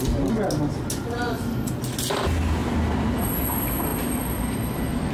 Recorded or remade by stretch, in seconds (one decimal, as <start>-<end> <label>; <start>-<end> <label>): 0.0-5.1 recorded